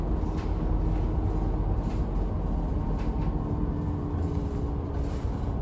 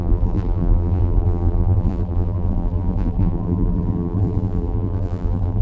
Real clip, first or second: first